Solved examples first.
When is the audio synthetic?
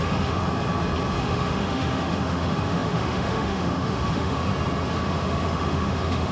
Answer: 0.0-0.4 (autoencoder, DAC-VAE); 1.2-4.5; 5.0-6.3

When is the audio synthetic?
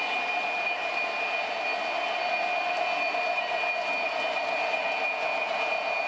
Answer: none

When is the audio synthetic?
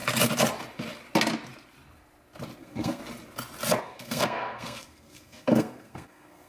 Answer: 2.6-3.0 (codec, SNAC); 3.8-6.5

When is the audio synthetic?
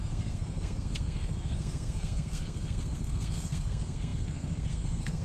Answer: 0.0-5.2 (codec, SNAC)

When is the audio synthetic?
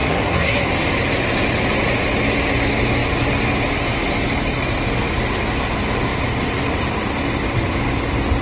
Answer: 0.0-0.7 (codec, SNAC)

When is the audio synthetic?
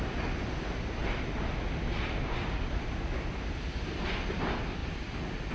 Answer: none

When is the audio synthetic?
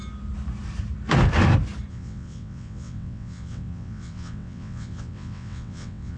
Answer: 1.9-6.2 (vocoder, WaveNeXt)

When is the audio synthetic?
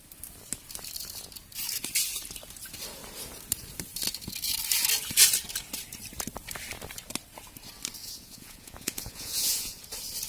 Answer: 8.0-9.8 (vocoder, Vocos)